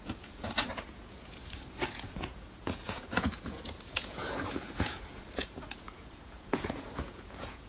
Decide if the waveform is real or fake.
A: fake